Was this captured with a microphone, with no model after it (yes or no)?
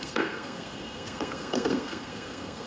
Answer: no